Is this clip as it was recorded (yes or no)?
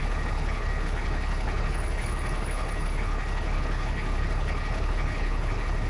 no